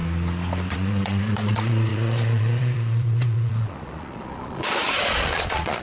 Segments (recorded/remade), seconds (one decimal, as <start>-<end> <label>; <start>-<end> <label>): 0.0-0.7 recorded; 0.7-5.8 remade